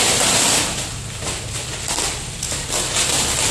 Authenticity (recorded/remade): recorded